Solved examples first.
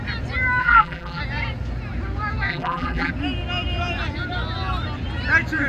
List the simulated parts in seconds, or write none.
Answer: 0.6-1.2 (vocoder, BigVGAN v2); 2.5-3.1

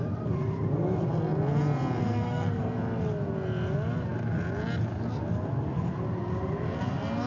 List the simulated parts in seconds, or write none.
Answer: 2.0-2.8 (codec, SNAC)